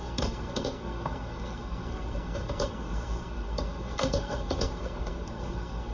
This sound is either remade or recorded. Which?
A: remade